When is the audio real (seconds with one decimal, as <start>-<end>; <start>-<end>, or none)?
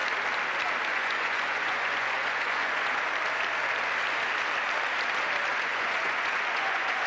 0.0-0.9; 3.0-5.5